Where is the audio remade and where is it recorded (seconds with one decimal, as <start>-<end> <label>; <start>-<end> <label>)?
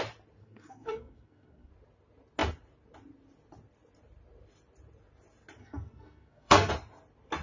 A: 0.0-0.4 recorded; 0.4-1.7 remade; 1.7-5.6 recorded; 5.6-6.7 remade; 6.7-7.4 recorded